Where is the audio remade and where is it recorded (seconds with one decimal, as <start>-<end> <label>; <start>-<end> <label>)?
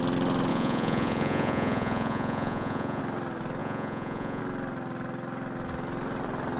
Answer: 0.0-0.5 recorded; 0.5-3.0 remade; 3.0-3.6 recorded; 3.6-4.4 remade; 4.4-6.6 recorded